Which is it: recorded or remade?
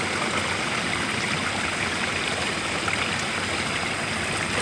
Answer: recorded